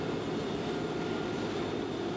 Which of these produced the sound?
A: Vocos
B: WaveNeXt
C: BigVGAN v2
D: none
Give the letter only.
D